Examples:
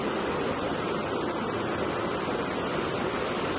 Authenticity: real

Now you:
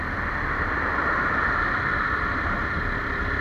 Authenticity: real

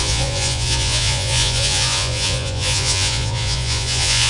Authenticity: fake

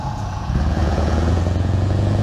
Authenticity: fake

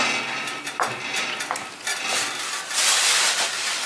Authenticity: real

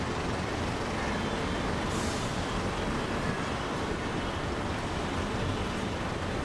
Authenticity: real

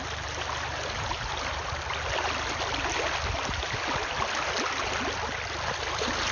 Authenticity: real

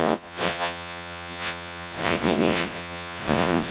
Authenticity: fake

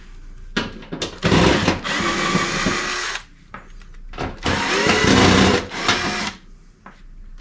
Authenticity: real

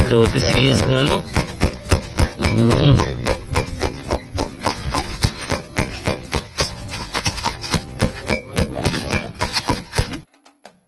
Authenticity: fake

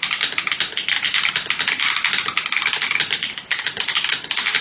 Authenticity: real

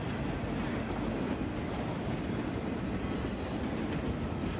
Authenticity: real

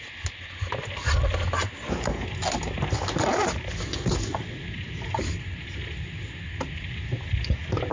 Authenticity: real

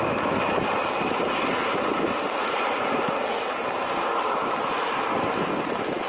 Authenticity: real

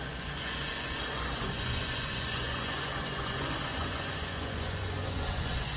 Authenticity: fake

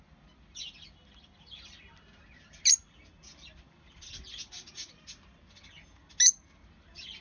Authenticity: real